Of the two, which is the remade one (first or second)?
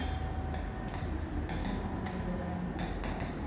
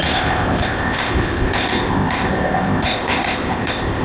second